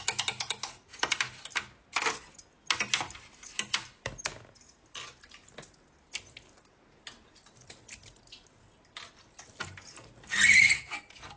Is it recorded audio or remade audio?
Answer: recorded